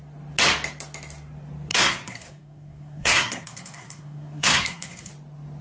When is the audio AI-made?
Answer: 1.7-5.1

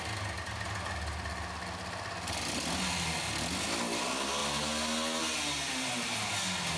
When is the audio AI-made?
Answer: none

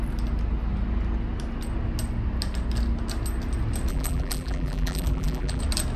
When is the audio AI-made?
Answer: 3.9-5.6

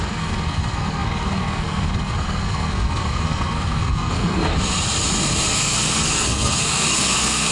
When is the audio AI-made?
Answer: 0.0-4.5; 5.5-7.5

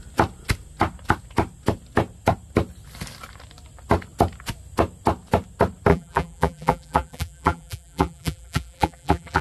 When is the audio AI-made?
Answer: 5.9-9.4

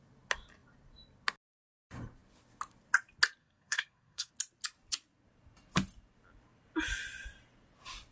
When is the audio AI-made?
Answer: 3.4-4.3

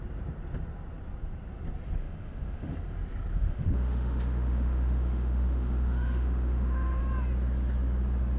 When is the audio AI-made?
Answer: 2.0-2.7; 3.3-7.0